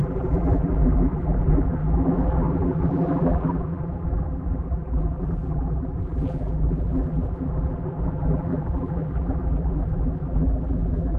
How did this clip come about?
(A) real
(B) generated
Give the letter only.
B